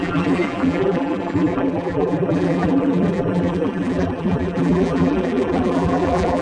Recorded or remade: remade